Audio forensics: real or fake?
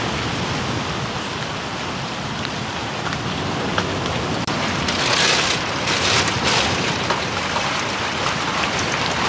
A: real